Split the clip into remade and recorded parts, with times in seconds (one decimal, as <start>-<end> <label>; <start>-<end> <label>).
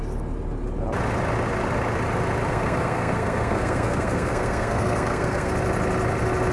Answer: 0.0-2.5 recorded; 2.5-5.5 remade; 5.5-6.5 recorded